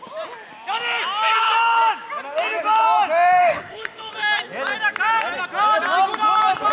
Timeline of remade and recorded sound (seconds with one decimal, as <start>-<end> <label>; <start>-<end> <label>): 0.0-3.4 recorded; 3.4-4.1 remade; 4.1-6.7 recorded